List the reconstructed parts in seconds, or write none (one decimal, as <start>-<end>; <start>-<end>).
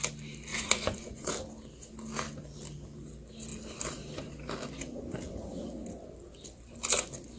0.5-1.3